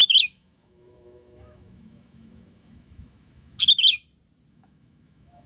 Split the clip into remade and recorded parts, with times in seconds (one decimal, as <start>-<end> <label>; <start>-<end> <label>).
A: 0.0-3.9 remade; 3.9-4.5 recorded; 4.5-5.5 remade